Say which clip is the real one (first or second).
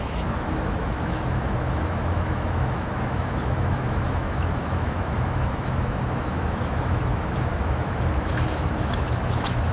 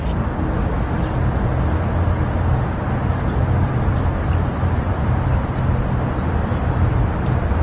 second